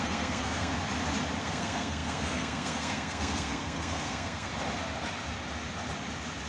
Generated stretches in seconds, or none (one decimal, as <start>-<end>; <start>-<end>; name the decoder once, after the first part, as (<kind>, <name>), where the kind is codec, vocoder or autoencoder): 0.0-0.7 (codec, SNAC); 1.4-4.5